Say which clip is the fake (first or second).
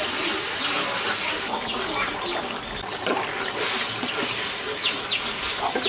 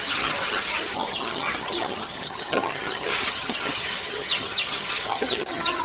second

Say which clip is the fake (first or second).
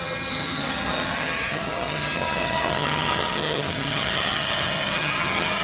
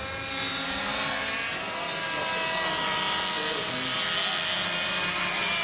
first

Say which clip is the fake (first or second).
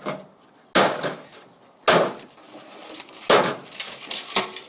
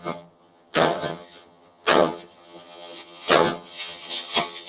second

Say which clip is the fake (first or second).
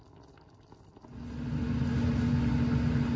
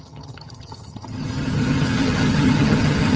second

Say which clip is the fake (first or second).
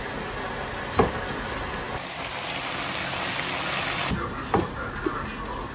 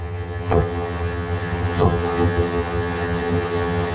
second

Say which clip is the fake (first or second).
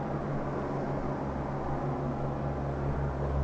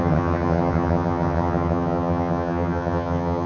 second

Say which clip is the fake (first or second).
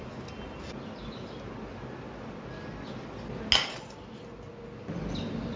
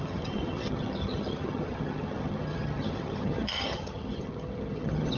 second